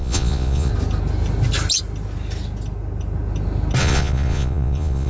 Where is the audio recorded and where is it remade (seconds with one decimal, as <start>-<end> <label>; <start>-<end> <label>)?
0.0-0.7 remade; 0.7-3.8 recorded; 3.8-5.1 remade